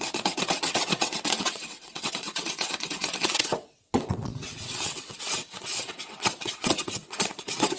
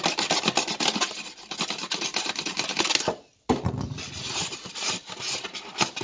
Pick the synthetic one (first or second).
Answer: first